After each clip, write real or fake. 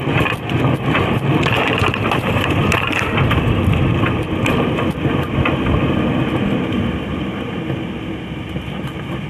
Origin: real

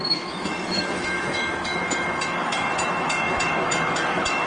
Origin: fake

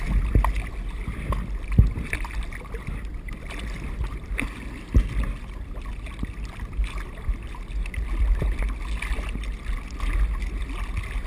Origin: real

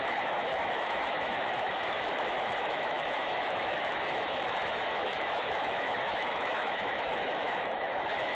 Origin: fake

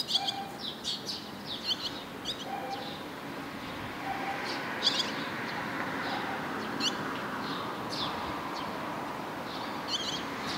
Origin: real